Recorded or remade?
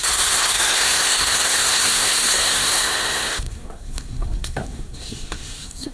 remade